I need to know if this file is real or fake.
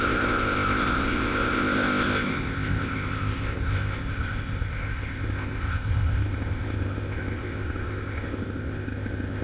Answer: fake